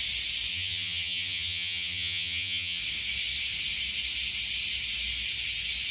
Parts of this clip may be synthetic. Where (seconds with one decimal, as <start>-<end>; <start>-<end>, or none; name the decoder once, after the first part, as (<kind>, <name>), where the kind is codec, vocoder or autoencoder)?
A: 0.5-2.8 (vocoder, HiFi-GAN)